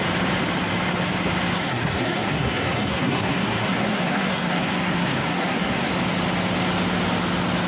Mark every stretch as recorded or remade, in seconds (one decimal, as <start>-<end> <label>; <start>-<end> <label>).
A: 0.0-1.5 recorded; 1.5-5.9 remade; 5.9-7.7 recorded